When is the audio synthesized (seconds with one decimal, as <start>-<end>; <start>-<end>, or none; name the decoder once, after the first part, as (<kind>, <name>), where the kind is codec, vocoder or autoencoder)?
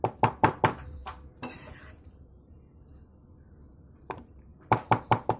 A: none